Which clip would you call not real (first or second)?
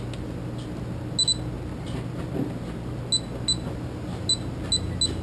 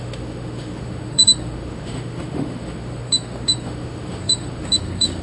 second